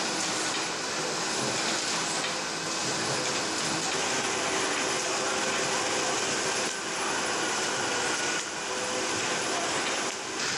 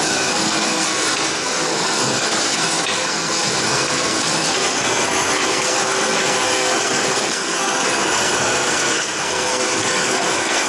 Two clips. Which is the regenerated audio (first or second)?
second